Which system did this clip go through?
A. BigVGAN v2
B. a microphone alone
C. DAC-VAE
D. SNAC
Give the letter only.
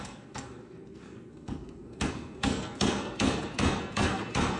D